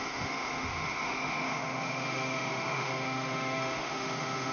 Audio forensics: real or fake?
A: fake